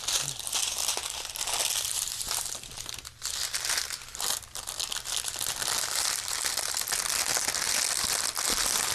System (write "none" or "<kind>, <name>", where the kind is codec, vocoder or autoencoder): none